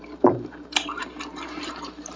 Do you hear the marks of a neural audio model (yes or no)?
yes